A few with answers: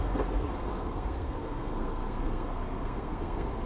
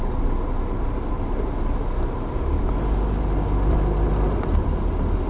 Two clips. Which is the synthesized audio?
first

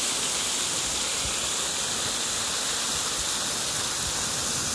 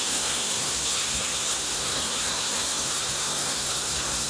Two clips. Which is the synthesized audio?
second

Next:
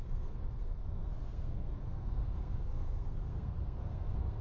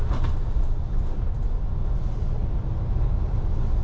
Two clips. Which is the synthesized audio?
first